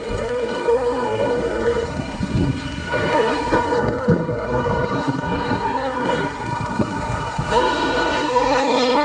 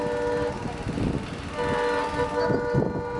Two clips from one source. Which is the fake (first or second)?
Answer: first